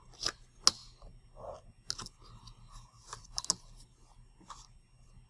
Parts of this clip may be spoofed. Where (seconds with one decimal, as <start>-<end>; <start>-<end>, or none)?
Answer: 3.0-3.5